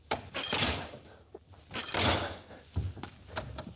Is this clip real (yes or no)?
yes